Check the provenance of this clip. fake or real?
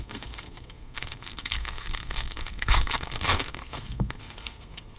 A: fake